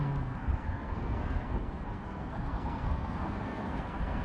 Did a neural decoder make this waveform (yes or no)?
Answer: yes